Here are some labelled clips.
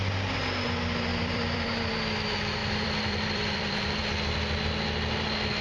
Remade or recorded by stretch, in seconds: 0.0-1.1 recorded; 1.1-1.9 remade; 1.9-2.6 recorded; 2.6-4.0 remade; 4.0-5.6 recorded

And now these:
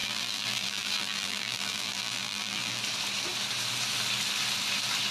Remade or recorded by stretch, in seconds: 0.0-2.8 remade; 2.8-5.1 recorded

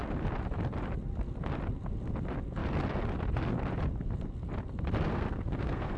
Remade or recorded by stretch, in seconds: 0.0-5.1 recorded; 5.1-6.0 remade

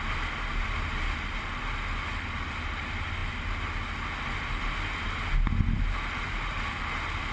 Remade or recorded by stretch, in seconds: 0.0-7.3 recorded

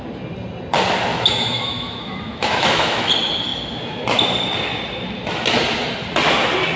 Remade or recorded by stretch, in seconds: 0.0-1.1 recorded; 1.1-3.1 remade; 3.1-6.8 recorded